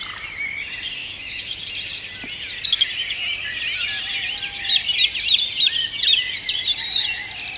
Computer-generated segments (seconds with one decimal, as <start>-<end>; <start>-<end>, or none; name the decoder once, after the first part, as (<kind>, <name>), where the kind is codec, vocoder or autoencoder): 1.0-1.6 (autoencoder, DAC-VAE)

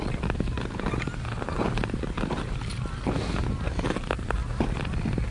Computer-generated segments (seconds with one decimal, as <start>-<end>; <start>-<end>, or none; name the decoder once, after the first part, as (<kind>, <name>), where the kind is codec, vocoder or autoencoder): none

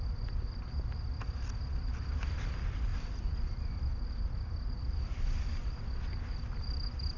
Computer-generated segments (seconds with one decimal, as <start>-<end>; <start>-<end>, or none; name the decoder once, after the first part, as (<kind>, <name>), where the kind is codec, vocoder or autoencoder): none